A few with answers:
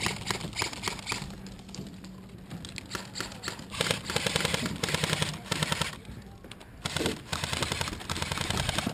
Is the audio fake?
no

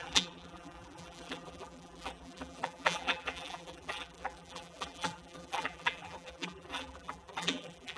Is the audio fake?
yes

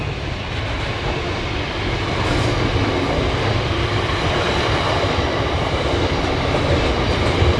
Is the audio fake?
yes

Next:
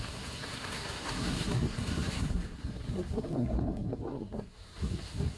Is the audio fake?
yes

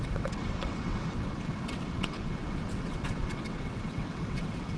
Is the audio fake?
yes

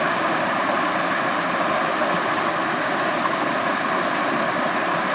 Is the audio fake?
no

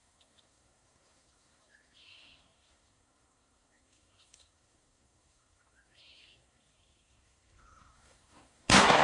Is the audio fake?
yes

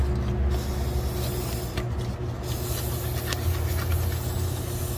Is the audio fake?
no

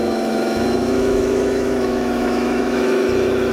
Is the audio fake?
yes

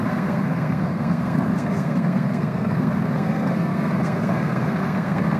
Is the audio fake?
yes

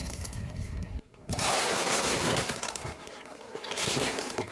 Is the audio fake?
yes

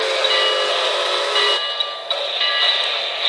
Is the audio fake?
no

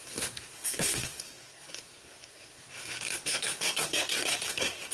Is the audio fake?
yes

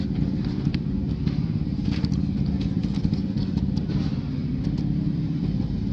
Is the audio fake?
yes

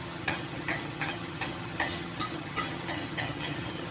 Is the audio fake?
yes